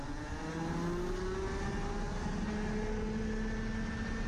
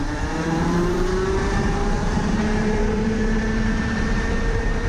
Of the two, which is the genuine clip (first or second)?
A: first